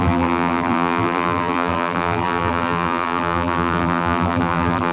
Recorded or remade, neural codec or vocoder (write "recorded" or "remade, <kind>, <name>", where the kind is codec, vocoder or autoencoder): remade, vocoder, BigVGAN v2